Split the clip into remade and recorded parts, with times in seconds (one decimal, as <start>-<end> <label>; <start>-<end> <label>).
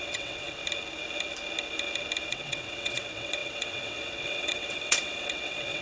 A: 0.0-0.6 remade; 0.6-2.3 recorded; 2.3-5.8 remade